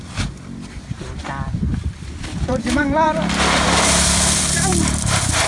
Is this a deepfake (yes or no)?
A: yes